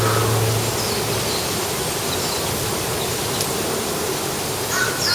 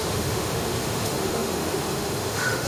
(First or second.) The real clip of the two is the first